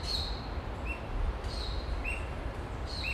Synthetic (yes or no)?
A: no